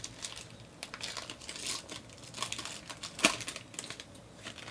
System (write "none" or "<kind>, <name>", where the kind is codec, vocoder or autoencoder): none